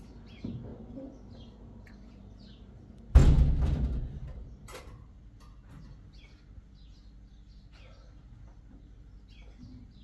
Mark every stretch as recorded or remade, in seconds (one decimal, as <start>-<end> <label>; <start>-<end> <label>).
0.0-10.0 recorded